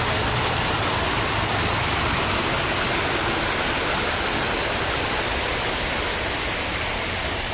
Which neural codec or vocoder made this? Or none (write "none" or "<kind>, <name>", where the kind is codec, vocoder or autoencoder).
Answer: none